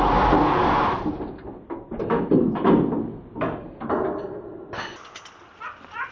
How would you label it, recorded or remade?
recorded